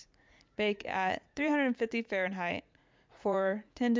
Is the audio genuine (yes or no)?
no